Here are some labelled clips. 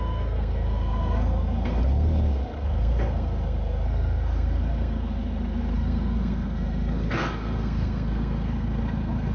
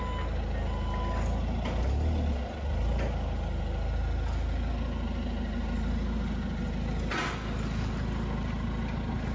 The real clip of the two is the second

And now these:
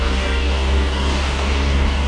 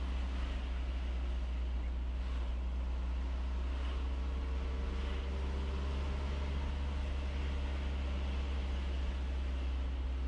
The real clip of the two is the second